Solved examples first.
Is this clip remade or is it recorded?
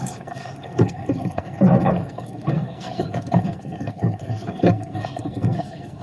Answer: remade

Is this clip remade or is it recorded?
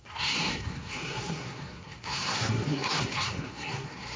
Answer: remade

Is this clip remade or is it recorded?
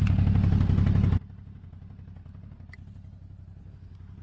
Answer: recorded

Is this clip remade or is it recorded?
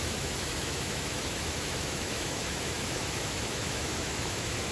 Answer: remade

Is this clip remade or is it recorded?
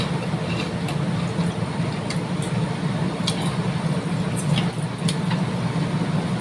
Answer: recorded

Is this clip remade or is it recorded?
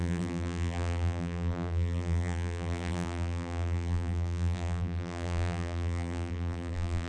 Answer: remade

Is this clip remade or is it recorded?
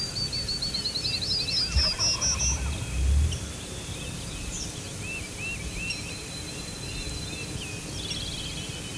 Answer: recorded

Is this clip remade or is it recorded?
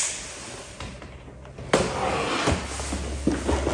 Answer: recorded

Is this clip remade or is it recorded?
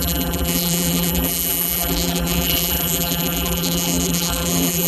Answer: remade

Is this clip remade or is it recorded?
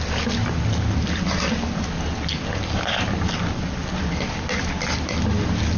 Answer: recorded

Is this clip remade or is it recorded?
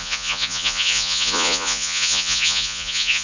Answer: remade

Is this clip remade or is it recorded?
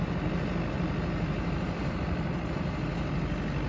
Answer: recorded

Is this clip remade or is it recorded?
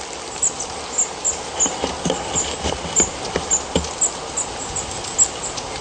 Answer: recorded